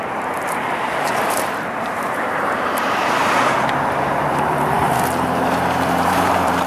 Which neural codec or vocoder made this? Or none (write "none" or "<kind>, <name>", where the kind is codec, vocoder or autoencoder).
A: vocoder, BigVGAN v2